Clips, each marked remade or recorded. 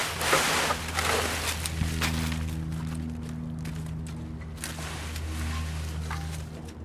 recorded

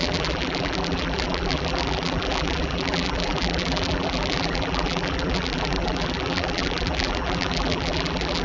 remade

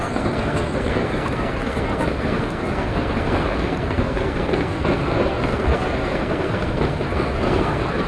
remade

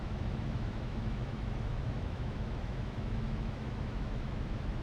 remade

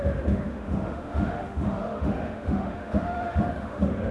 remade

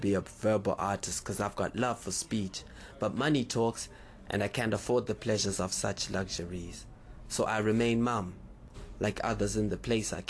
recorded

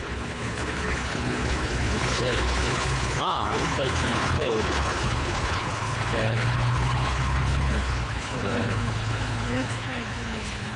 remade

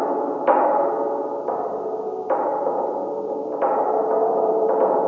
remade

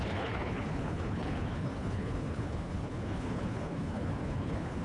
remade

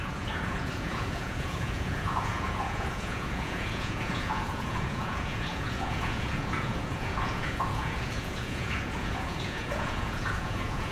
remade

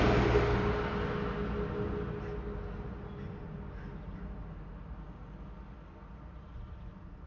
recorded